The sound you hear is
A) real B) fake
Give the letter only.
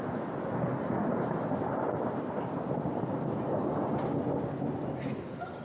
A